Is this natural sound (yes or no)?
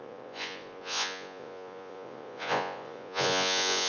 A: no